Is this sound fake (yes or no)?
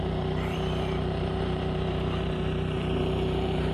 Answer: yes